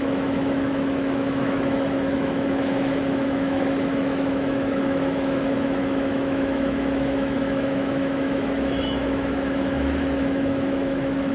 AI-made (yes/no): yes